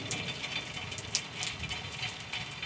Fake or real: real